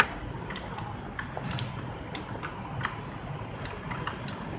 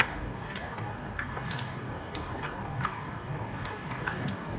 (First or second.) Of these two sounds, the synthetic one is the second